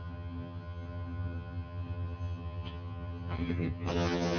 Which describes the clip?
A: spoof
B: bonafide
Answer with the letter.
A